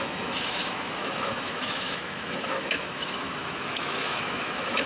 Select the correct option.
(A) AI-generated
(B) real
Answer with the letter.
A